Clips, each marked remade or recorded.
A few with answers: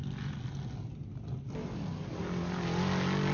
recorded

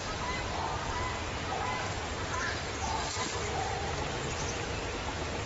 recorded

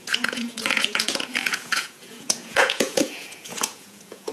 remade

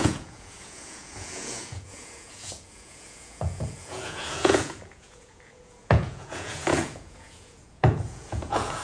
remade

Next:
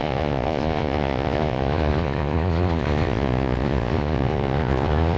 remade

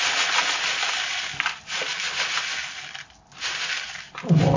recorded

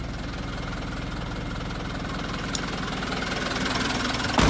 recorded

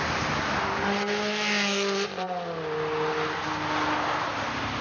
recorded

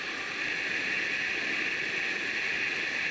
recorded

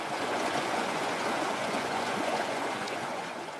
remade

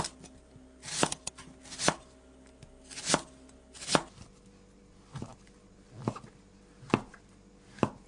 recorded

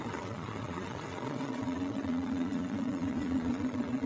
remade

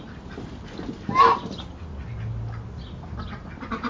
recorded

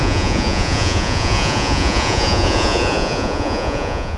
remade